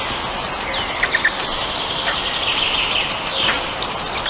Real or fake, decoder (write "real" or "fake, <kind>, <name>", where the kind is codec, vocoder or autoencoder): real